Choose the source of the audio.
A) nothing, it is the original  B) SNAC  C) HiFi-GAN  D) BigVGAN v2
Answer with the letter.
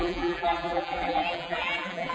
D